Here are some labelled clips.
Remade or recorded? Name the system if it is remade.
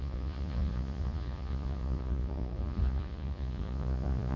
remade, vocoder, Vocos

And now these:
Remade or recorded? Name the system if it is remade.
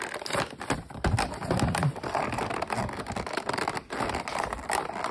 recorded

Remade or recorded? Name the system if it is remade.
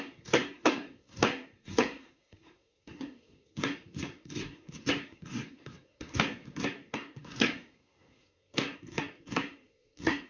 remade, codec, SNAC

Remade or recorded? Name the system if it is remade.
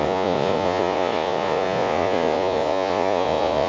remade, vocoder, Vocos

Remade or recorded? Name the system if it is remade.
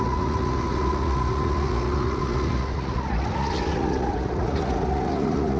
remade, vocoder, Vocos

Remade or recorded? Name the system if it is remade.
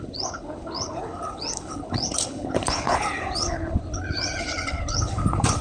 remade, codec, HILCodec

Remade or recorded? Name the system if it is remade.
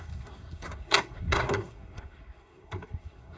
remade, codec, SNAC